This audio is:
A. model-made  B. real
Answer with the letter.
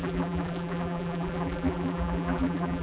A